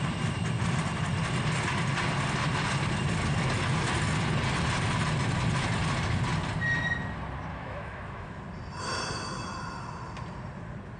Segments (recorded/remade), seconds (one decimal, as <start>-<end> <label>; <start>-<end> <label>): 0.0-7.5 recorded; 7.5-8.4 remade; 8.4-11.0 recorded